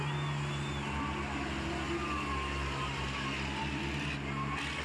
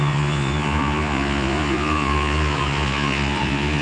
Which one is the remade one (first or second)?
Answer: second